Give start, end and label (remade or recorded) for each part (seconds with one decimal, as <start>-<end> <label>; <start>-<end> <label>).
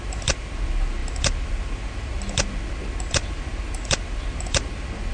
0.0-5.1 recorded